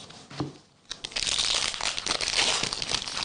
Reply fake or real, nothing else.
real